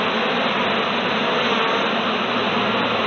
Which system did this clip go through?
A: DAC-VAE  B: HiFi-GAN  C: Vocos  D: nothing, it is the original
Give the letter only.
D